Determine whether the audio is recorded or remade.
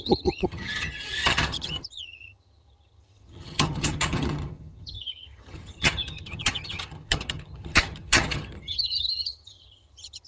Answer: remade